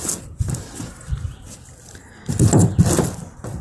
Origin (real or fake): real